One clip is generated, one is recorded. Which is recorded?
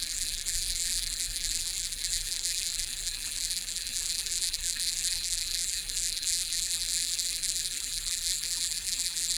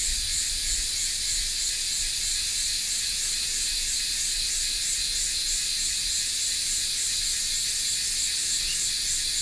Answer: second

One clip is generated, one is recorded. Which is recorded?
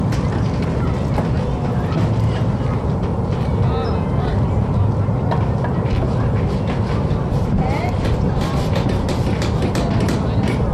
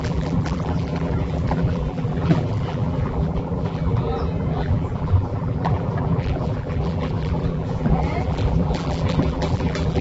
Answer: first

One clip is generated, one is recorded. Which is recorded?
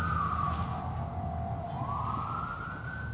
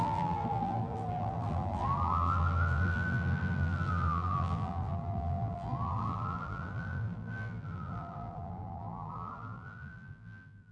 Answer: first